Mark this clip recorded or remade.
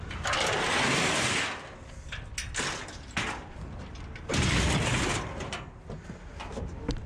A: recorded